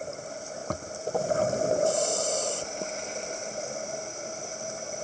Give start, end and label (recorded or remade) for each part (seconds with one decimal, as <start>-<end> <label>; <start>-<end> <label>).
0.0-5.0 recorded